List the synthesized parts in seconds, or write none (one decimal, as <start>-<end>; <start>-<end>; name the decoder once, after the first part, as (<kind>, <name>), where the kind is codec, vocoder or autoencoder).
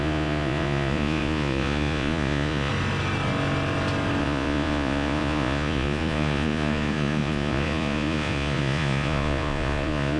0.0-2.7 (vocoder, Vocos); 4.2-10.2